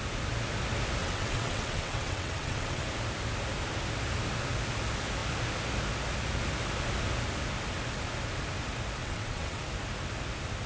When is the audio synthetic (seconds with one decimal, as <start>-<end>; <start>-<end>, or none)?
1.0-2.8; 9.0-9.6